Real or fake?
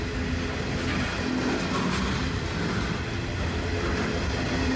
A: real